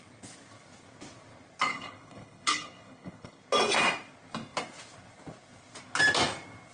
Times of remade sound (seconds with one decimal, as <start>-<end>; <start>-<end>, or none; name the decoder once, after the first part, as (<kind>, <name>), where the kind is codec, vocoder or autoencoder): 1.7-3.4 (codec, HILCodec)